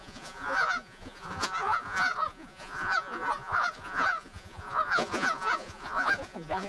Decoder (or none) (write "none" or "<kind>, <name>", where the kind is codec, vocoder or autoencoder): vocoder, Vocos